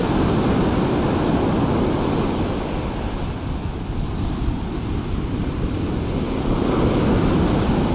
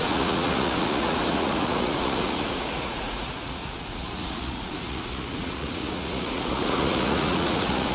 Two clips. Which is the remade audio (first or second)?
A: second